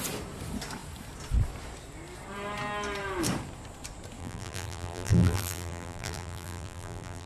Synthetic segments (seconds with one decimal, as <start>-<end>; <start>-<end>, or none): 4.2-7.3